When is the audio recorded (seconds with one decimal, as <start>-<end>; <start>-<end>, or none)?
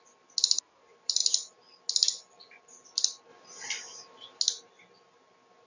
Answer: 0.0-5.7